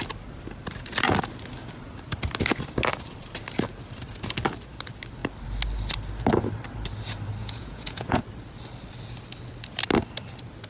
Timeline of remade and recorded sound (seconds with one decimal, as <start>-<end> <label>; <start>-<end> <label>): 0.0-7.4 recorded; 7.4-8.2 remade; 8.2-10.7 recorded